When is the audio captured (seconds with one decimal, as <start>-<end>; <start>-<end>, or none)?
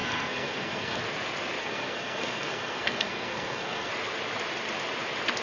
1.0-1.6; 3.9-5.4